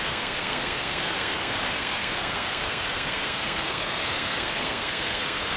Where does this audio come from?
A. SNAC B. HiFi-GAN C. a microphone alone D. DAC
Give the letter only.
A